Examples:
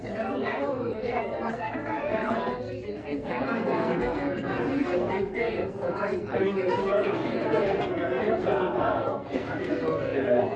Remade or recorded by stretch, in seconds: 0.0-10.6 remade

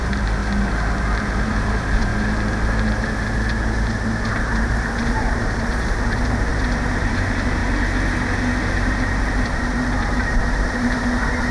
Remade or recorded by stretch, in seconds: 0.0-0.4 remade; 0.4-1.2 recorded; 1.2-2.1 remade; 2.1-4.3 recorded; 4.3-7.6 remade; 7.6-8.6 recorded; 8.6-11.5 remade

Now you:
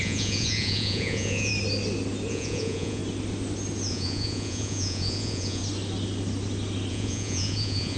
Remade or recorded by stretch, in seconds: 0.0-1.5 remade; 1.5-2.3 recorded; 2.3-3.0 remade; 3.0-3.9 recorded; 3.9-5.6 remade; 5.6-6.9 recorded; 6.9-8.0 remade

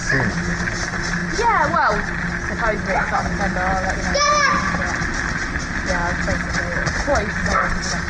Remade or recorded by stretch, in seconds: 0.0-8.1 recorded

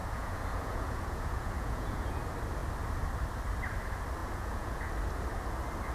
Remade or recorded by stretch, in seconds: 0.0-2.2 remade; 2.2-4.2 recorded; 4.2-4.9 remade; 4.9-5.9 recorded